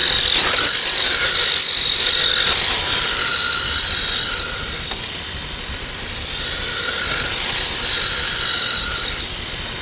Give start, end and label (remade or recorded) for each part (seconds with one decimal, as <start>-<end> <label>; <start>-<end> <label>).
0.0-9.8 recorded